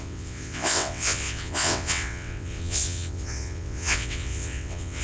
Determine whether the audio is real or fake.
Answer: fake